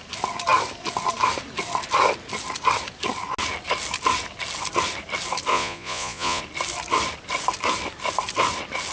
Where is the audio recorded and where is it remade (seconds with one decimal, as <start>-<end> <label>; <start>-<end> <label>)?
0.0-5.5 recorded; 5.5-6.4 remade; 6.4-8.9 recorded